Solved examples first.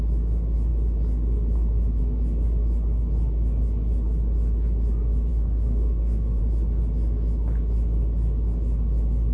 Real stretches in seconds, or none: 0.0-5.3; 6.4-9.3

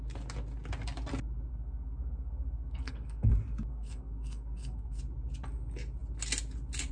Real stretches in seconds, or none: 0.0-1.5; 3.3-3.7; 5.0-6.9

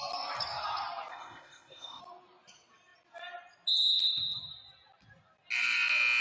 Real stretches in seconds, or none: 0.0-1.1; 2.0-6.2

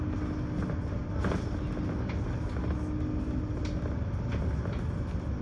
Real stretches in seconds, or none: 0.0-5.4